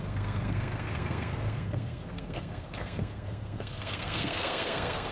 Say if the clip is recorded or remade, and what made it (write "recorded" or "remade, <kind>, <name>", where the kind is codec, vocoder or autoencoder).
remade, codec, SNAC